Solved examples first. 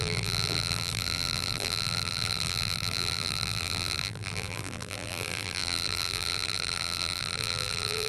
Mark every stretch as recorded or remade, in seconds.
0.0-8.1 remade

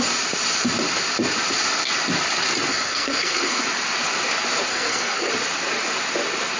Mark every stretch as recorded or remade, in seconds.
0.0-2.7 recorded; 2.7-3.6 remade; 3.6-4.7 recorded; 4.7-5.3 remade; 5.3-6.6 recorded

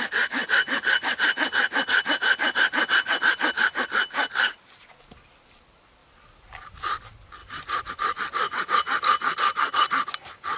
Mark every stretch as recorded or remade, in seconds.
0.0-6.0 recorded; 6.0-7.0 remade; 7.0-7.4 recorded; 7.4-7.9 remade; 7.9-10.6 recorded